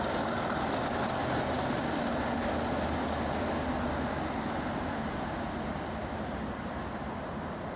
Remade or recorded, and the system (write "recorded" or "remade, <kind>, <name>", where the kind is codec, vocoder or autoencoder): recorded